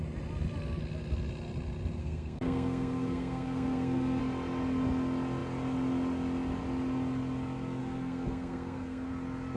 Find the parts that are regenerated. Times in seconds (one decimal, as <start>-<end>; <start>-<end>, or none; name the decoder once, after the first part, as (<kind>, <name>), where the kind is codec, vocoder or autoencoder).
2.0-4.2 (codec, SNAC); 7.8-9.1

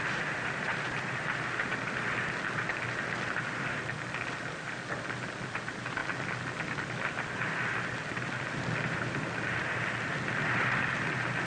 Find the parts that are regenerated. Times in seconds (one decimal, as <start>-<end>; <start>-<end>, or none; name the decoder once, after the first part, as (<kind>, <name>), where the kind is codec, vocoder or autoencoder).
none

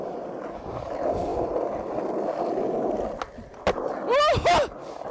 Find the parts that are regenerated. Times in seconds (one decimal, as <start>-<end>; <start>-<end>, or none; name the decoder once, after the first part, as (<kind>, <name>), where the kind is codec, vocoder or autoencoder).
none

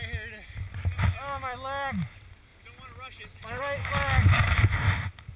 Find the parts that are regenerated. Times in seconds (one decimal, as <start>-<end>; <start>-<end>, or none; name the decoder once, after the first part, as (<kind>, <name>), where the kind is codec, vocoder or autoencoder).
none

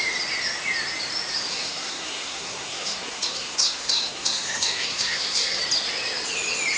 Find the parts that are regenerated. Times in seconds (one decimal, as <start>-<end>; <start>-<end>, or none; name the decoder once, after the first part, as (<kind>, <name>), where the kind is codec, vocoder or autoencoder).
1.5-5.6 (codec, SNAC)

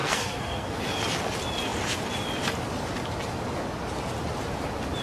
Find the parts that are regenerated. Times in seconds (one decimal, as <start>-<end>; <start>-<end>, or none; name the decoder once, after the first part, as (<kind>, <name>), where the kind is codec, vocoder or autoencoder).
0.0-0.8 (codec, SNAC)

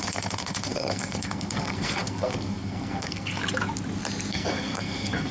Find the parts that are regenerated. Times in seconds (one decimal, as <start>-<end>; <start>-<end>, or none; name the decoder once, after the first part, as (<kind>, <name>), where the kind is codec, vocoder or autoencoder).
0.0-3.4 (codec, SNAC); 4.3-5.3